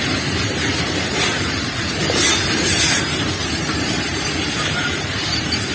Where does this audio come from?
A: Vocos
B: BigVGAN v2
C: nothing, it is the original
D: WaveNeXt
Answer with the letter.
B